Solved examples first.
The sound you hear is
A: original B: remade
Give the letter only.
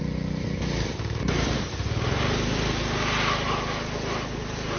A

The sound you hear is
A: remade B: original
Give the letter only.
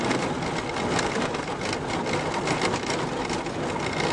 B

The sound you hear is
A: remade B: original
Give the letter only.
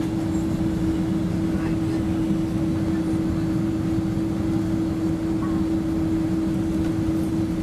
B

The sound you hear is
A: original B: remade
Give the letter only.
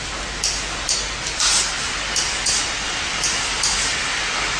A